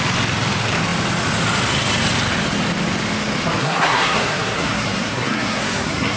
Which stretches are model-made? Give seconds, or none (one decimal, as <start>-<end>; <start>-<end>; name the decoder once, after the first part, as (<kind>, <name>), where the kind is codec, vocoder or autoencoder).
3.6-6.2 (codec, SNAC)